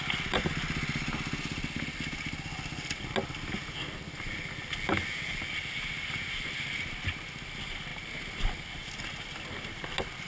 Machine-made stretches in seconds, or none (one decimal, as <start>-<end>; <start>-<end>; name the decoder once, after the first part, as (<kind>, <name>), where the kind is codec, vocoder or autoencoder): none